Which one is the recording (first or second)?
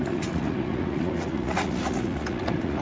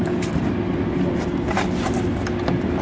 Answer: second